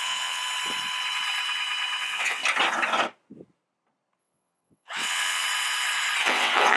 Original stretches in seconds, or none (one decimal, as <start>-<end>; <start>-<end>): 0.4-2.0; 2.4-4.2; 5.4-6.2